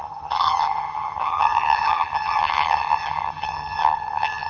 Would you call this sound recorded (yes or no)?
no